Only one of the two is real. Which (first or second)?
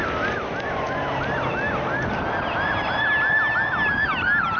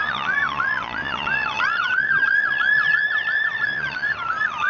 first